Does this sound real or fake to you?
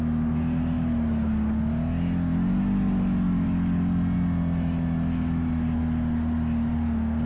real